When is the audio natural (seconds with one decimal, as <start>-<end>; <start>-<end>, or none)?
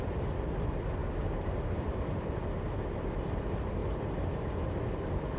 3.8-5.0